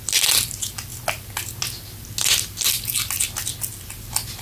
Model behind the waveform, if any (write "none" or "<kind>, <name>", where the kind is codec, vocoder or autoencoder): none